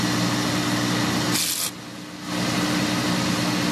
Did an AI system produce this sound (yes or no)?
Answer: no